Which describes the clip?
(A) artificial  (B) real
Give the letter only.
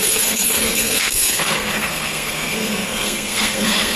A